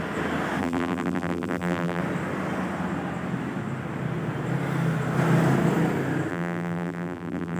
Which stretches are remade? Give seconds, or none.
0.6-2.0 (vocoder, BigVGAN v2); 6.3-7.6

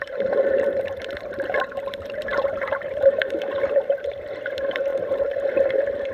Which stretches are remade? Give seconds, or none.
0.0-6.1 (vocoder, BigVGAN v2)

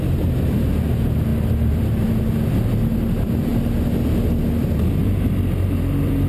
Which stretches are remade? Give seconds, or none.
1.3-2.1 (vocoder, BigVGAN v2)

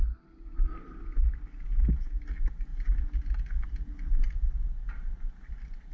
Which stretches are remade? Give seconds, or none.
none

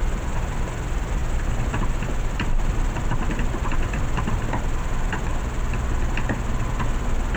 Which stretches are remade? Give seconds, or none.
0.0-5.3 (vocoder, BigVGAN v2); 6.8-7.4

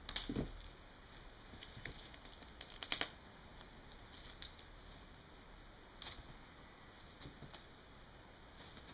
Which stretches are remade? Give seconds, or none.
none

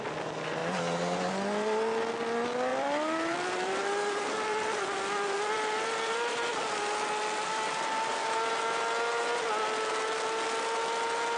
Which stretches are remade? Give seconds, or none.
0.6-1.3 (vocoder, BigVGAN v2); 2.7-7.6

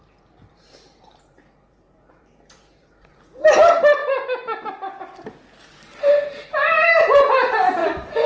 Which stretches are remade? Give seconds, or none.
0.0-4.0 (vocoder, BigVGAN v2); 6.0-8.3